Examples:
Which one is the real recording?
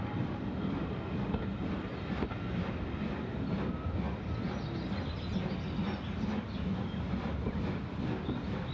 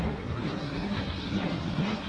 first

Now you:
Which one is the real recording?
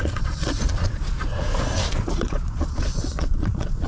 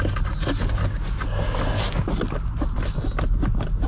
second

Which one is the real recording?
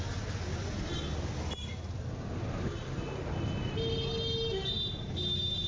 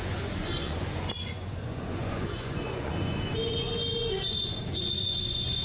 first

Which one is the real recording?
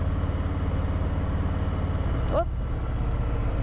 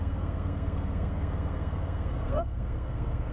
first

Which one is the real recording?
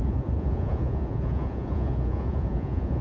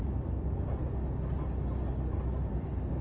second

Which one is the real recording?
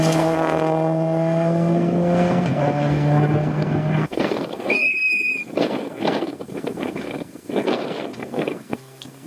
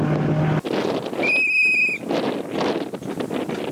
second